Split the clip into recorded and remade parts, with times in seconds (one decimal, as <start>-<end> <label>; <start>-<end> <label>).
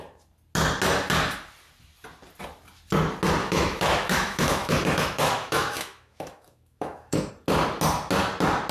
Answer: 0.0-3.4 recorded; 3.4-7.3 remade; 7.3-8.7 recorded